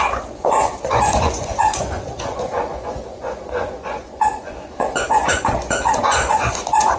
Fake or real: fake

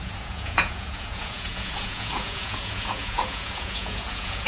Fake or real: fake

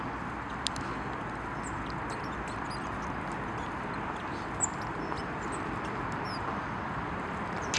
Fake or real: real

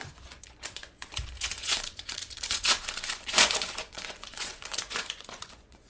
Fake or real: fake